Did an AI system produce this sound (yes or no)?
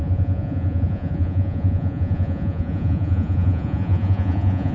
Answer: yes